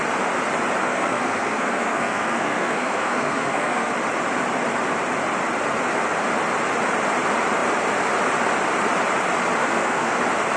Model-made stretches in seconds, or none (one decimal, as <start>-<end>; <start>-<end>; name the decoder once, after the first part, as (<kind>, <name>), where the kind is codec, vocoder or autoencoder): 0.9-3.9 (codec, SNAC); 9.6-10.2